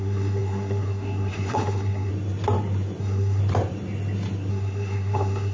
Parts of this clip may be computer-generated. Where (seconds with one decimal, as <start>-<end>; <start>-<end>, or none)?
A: 0.0-2.1; 3.0-3.4; 4.5-5.5

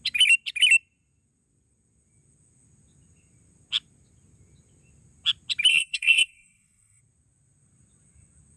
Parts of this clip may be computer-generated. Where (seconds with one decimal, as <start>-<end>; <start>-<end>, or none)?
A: 5.7-7.0

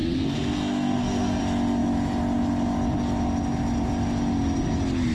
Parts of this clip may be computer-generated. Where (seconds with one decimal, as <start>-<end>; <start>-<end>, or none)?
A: 0.0-1.4

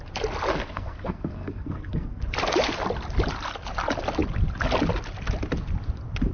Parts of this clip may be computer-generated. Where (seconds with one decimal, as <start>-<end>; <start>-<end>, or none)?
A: 0.5-2.2

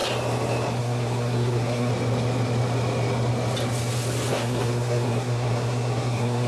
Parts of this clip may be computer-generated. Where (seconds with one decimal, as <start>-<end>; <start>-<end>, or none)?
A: 0.8-1.9; 4.3-6.5